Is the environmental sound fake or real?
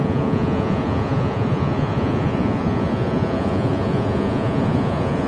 fake